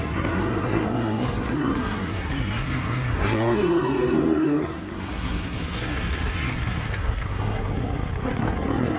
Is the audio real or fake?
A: fake